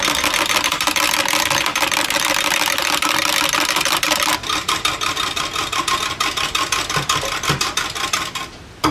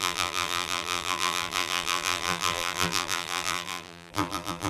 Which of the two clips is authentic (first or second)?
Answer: first